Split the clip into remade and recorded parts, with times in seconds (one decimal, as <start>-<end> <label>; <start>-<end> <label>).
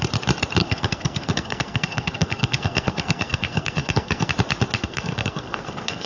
0.0-0.6 recorded; 0.6-4.3 remade; 4.3-4.8 recorded; 4.8-6.1 remade